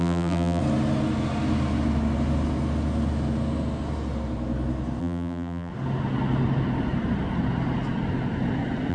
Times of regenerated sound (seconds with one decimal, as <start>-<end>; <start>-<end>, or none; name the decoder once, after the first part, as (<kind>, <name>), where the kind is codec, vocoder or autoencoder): 0.0-0.6 (vocoder, BigVGAN v2); 5.0-5.7